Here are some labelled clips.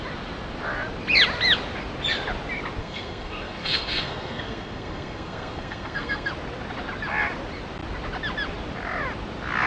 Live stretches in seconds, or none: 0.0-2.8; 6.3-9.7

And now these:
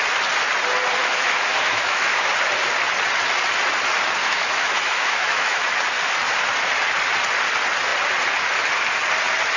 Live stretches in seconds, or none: 0.0-1.0; 2.2-4.2; 5.6-9.6